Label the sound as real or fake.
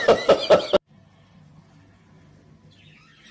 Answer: real